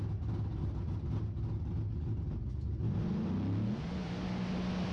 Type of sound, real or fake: real